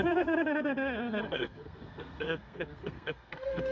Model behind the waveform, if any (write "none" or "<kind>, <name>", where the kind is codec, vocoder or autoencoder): codec, SNAC